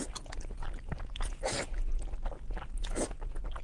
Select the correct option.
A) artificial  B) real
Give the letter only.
B